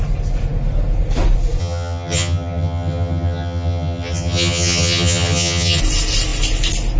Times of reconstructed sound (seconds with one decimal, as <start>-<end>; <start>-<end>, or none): 1.6-5.8